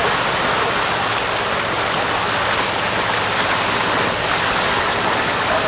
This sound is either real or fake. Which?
real